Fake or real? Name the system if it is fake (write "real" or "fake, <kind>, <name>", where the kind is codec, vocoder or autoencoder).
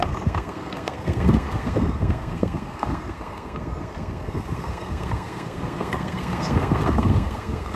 fake, codec, SNAC